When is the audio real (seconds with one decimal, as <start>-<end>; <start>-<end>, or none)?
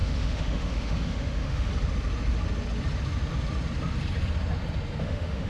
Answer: 1.7-5.0